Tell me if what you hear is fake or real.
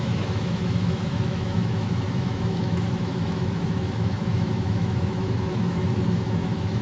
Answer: fake